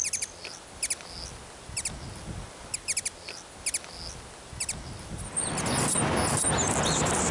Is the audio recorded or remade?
recorded